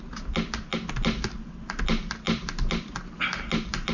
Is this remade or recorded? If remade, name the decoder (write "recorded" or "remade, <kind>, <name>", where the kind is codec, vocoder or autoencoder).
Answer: recorded